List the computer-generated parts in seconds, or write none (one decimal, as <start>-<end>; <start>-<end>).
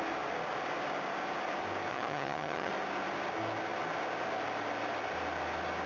1.9-2.7